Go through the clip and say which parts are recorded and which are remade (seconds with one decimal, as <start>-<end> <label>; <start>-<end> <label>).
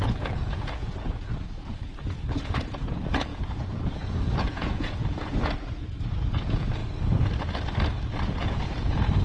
0.0-6.8 remade; 6.8-8.4 recorded; 8.4-9.2 remade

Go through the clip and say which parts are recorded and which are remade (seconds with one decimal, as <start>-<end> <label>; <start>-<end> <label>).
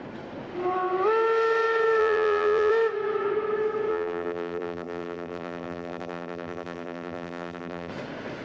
0.0-2.0 recorded; 2.0-2.7 remade; 2.7-3.9 recorded; 3.9-7.9 remade; 7.9-8.4 recorded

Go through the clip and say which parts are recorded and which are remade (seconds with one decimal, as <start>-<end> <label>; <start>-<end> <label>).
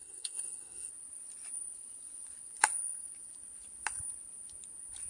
0.0-0.9 remade; 0.9-5.1 recorded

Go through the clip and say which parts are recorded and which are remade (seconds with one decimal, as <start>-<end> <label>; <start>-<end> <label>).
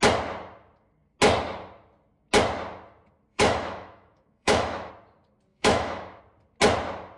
0.0-3.3 recorded; 3.3-4.9 remade; 4.9-5.5 recorded; 5.5-6.2 remade; 6.2-7.2 recorded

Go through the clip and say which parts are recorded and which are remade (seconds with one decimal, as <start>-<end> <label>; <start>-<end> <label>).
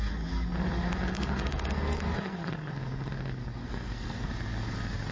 0.0-1.1 recorded; 1.1-2.7 remade; 2.7-3.6 recorded; 3.6-4.3 remade; 4.3-5.1 recorded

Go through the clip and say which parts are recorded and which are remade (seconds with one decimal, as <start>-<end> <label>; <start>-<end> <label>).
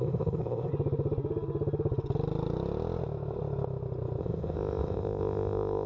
0.0-0.7 remade; 0.7-4.2 recorded; 4.2-5.9 remade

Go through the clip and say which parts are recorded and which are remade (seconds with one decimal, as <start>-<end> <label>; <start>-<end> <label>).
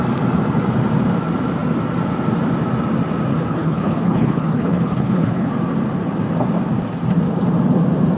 0.0-3.3 recorded; 3.3-5.5 remade; 5.5-8.2 recorded